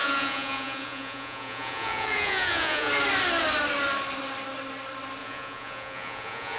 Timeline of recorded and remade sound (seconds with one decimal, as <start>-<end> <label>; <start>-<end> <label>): 0.0-2.9 remade; 2.9-5.2 recorded; 5.2-6.6 remade